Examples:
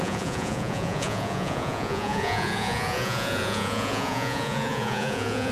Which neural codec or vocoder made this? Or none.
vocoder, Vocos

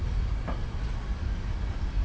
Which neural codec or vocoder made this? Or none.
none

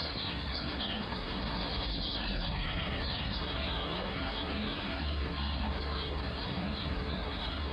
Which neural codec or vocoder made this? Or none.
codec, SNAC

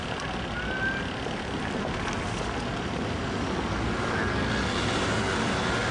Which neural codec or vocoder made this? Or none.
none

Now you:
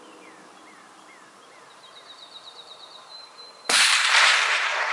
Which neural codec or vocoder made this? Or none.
vocoder, BigVGAN v2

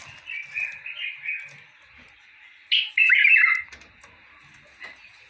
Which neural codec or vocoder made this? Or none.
none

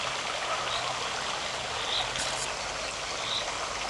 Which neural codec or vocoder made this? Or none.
none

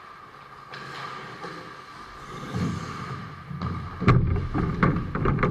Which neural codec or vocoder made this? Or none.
none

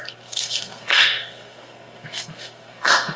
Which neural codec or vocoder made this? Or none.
codec, SNAC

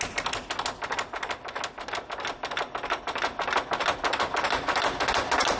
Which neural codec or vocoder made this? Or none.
none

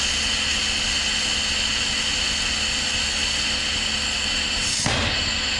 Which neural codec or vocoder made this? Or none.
none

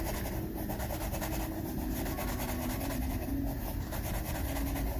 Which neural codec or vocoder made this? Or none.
none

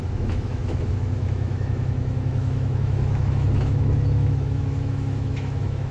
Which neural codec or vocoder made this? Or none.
autoencoder, DAC-VAE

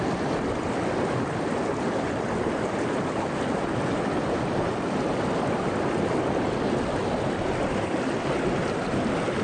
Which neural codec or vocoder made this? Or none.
none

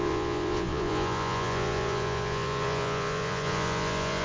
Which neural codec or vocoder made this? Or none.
vocoder, Vocos